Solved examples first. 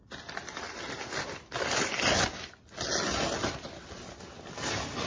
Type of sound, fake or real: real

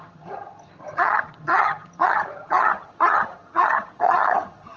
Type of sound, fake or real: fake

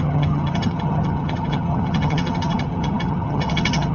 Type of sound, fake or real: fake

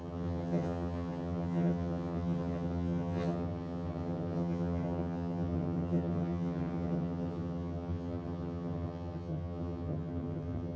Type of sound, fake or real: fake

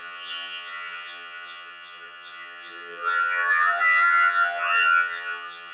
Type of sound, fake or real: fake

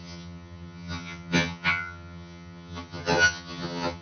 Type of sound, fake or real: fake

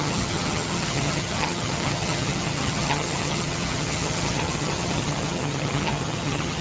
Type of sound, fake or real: fake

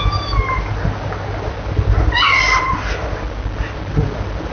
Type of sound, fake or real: real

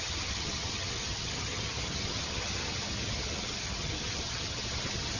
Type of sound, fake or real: fake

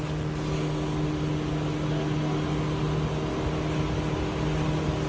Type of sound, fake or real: real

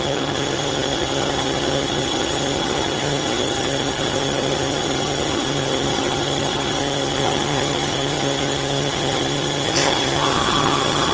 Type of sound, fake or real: fake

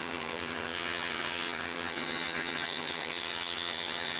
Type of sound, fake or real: fake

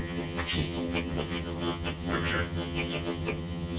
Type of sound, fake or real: fake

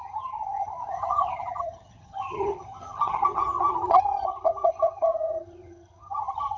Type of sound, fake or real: fake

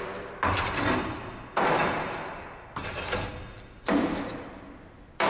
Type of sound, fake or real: real